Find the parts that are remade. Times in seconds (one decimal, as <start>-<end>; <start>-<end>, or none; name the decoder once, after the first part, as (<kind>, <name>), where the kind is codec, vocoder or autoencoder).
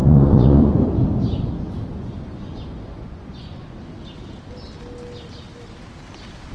0.0-0.8 (vocoder, Vocos); 1.9-3.9